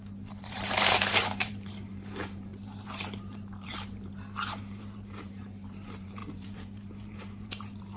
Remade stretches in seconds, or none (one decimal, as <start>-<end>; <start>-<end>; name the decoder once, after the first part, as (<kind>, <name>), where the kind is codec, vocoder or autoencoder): 0.0-8.0 (vocoder, BigVGAN v2)